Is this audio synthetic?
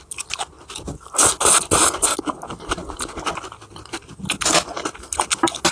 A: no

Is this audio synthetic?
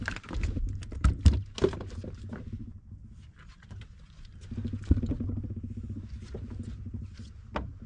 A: no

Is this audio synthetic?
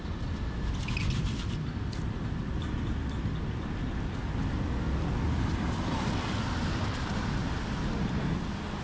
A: no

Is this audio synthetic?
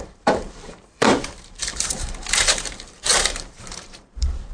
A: yes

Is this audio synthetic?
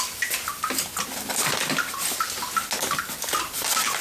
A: no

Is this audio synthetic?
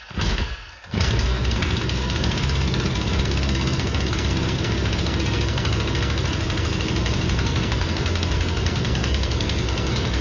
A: yes